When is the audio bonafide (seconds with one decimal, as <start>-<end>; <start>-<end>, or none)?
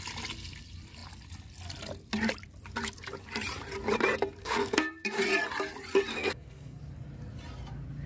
0.0-4.4; 5.2-6.1; 6.8-8.1